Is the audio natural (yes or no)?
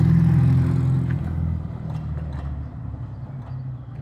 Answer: yes